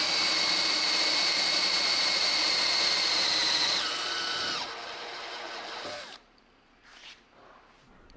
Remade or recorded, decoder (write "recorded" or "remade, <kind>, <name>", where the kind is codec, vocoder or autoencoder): remade, vocoder, BigVGAN v2